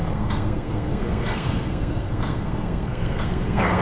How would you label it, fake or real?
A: fake